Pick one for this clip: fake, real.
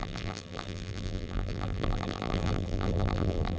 fake